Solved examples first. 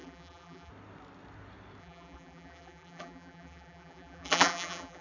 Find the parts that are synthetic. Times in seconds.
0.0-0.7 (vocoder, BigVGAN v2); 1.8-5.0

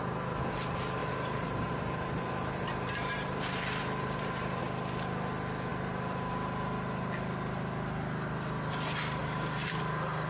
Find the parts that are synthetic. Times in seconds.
1.0-4.6 (vocoder, BigVGAN v2); 5.7-6.3; 9.2-9.8

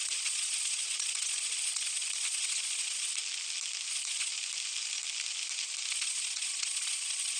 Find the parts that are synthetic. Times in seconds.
0.0-3.2 (vocoder, Vocos); 3.9-4.3; 5.9-7.4

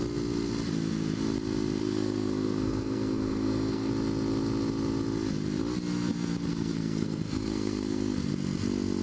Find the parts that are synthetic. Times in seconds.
1.8-3.9 (codec, SNAC); 6.5-8.3

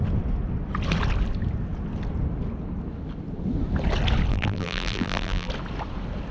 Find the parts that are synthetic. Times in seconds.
4.3-5.5 (vocoder, BigVGAN v2)

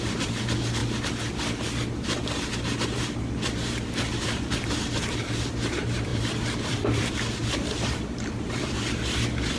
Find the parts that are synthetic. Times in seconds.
0.0-0.8 (vocoder, BigVGAN v2); 3.2-9.6